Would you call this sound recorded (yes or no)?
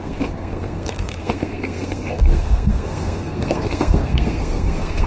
no